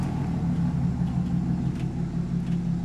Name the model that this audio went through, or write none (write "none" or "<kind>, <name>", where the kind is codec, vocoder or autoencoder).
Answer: none